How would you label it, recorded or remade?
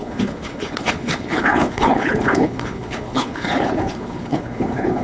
remade